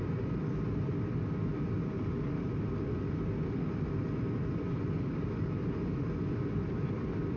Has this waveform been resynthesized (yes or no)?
no